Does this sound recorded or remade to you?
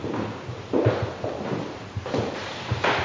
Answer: recorded